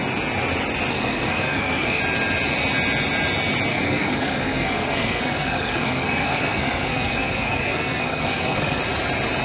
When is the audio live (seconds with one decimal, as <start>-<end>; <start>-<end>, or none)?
0.0-0.9; 2.0-3.7; 8.8-9.4